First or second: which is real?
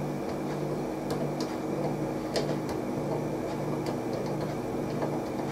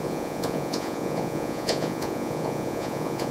first